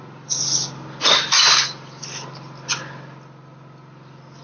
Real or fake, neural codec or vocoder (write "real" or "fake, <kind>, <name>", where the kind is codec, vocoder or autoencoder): real